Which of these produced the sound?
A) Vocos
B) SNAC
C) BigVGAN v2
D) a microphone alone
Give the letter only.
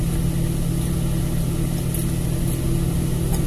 D